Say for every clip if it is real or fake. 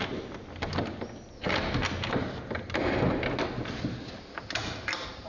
real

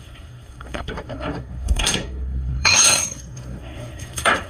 fake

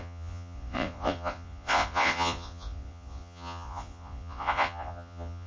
fake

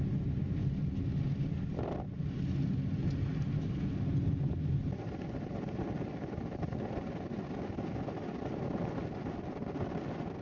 real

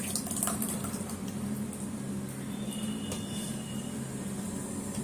real